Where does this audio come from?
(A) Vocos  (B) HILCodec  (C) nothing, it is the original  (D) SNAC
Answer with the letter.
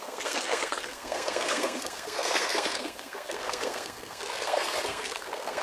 D